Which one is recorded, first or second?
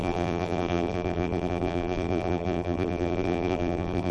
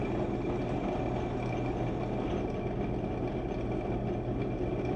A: second